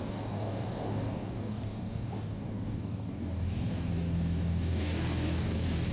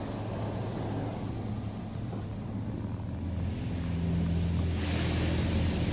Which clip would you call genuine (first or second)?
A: second